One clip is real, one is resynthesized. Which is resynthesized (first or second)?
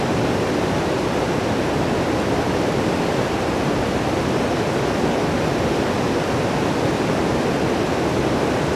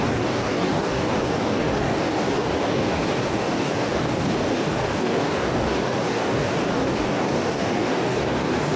second